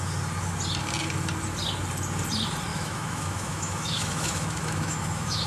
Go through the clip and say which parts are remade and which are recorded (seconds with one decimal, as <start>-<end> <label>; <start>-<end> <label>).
0.0-2.7 recorded; 2.7-5.5 remade